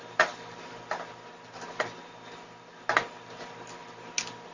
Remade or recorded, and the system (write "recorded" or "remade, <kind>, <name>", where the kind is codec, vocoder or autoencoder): recorded